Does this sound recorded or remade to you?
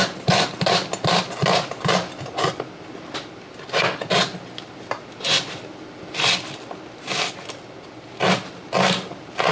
recorded